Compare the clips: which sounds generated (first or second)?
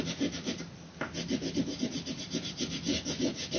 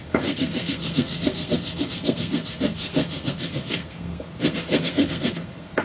second